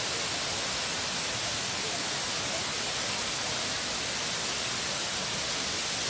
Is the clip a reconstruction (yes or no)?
no